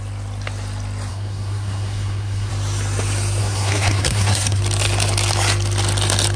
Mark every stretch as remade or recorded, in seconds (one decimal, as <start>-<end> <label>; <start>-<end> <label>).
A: 0.0-1.1 recorded; 1.1-2.5 remade; 2.5-3.4 recorded; 3.4-4.6 remade; 4.6-6.4 recorded